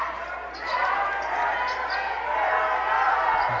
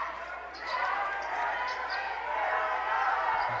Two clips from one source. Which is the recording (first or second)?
first